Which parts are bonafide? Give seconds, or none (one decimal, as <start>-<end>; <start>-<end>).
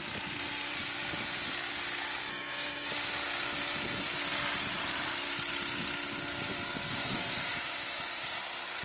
0.0-2.3; 2.9-6.9; 8.4-8.8